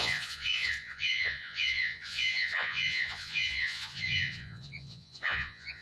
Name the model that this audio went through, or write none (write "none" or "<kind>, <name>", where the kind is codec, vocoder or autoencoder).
vocoder, Vocos